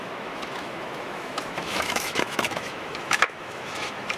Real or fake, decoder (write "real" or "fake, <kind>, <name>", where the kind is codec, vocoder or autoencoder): fake, autoencoder, DAC-VAE